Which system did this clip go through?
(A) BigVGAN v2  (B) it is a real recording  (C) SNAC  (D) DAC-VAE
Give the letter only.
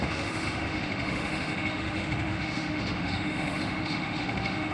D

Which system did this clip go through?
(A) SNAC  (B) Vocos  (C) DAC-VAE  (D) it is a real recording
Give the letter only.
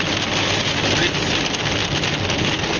D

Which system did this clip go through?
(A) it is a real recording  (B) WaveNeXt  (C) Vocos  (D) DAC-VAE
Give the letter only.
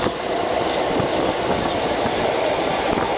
A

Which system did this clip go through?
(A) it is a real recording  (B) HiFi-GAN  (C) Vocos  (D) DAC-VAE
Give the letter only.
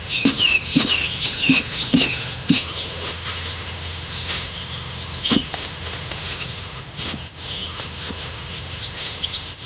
D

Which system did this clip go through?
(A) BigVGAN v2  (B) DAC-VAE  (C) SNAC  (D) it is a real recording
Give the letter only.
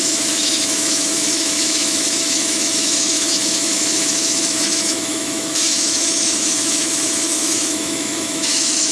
B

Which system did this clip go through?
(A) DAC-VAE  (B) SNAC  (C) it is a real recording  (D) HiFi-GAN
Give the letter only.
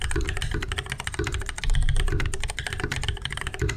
C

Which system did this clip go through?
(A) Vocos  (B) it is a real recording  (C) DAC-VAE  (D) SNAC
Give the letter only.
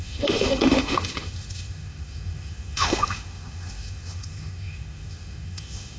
C